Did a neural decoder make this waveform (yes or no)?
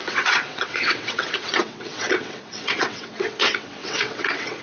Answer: yes